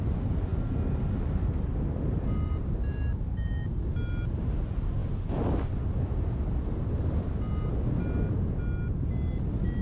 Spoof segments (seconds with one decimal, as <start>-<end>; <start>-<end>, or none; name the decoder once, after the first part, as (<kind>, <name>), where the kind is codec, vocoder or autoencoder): none